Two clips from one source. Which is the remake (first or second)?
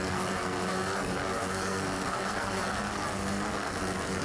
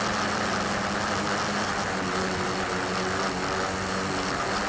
first